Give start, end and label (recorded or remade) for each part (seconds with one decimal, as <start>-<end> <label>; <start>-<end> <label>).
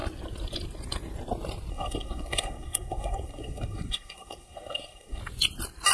0.0-1.7 recorded; 1.7-5.2 remade; 5.2-5.9 recorded